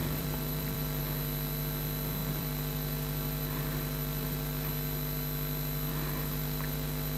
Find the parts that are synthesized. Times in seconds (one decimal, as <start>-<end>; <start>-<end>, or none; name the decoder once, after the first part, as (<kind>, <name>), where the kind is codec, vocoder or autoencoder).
0.0-1.0 (vocoder, BigVGAN v2); 2.2-4.7; 5.9-7.2